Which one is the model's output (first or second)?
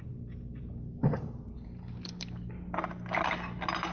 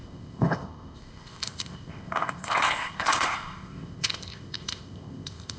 second